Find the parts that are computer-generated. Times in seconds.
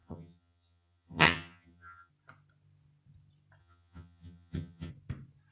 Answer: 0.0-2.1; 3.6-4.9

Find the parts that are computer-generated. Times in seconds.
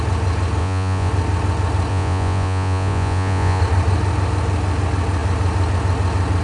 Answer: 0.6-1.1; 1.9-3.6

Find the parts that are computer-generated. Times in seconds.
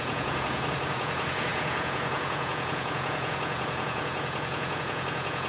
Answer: 0.0-5.5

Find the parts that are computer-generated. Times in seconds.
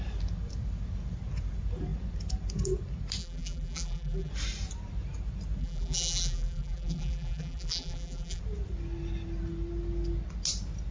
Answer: 3.2-4.3; 5.6-8.4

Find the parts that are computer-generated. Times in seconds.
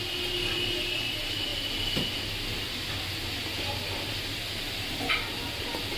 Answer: none